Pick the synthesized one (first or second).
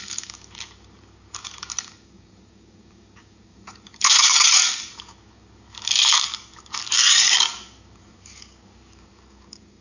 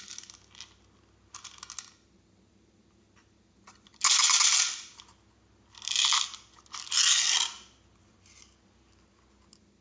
first